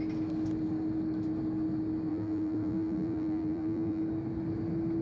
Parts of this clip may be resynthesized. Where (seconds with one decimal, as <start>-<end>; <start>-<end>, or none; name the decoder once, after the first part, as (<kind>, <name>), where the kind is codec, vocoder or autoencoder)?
2.1-4.0 (vocoder, BigVGAN v2)